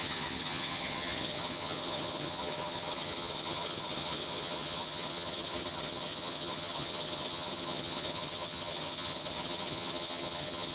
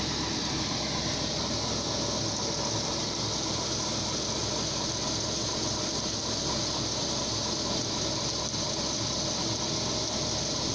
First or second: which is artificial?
first